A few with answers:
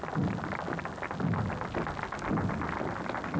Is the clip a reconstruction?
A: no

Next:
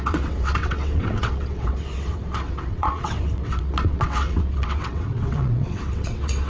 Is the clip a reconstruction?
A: yes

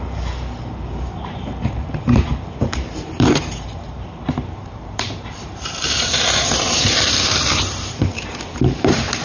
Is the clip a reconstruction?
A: yes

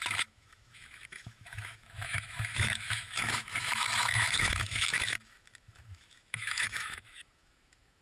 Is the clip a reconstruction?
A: yes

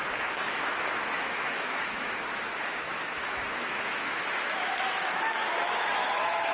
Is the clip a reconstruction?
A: yes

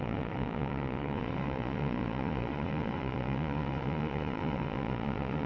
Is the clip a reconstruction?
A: yes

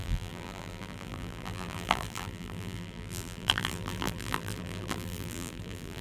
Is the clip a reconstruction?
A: yes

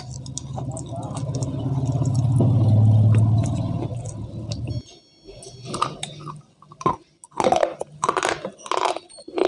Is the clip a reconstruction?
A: no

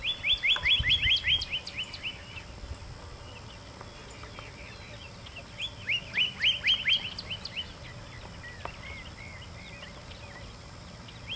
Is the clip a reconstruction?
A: no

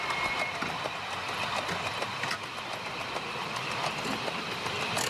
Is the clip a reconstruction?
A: no